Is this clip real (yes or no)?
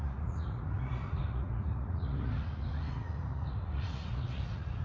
no